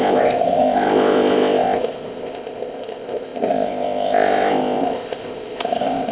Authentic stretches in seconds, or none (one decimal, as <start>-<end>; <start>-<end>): none